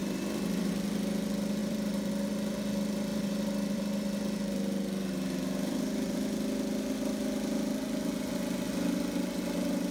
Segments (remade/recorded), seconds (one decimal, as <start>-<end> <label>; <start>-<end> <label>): 0.0-0.7 remade; 0.7-1.6 recorded; 1.6-2.1 remade; 2.1-3.1 recorded; 3.1-3.8 remade; 3.8-9.9 recorded